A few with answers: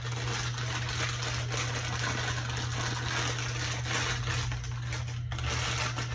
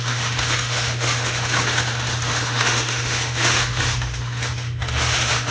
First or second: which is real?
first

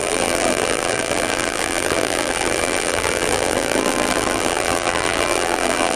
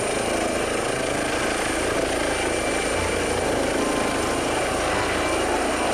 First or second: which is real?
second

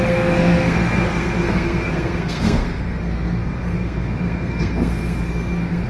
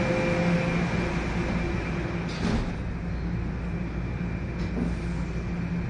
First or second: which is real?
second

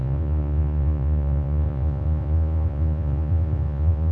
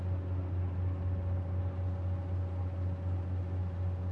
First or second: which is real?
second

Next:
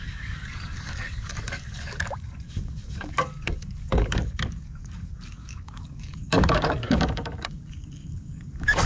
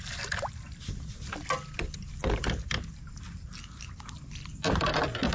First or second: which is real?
second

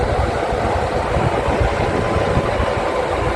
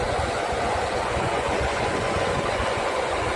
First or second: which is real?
first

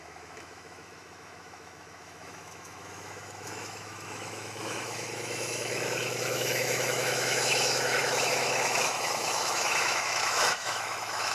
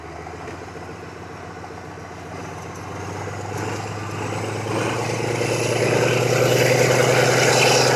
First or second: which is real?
second